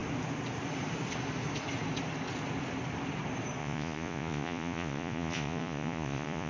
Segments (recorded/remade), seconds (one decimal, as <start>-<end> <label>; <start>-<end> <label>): 0.0-3.6 recorded; 3.6-6.5 remade